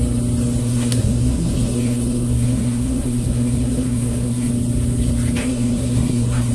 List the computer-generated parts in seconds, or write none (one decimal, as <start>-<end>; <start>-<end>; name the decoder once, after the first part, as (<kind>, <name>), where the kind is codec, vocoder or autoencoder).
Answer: 0.6-4.5 (codec, SNAC); 5.4-6.5